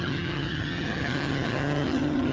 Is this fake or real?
fake